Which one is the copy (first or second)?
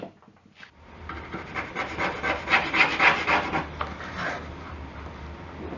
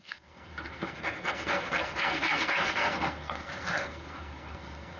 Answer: second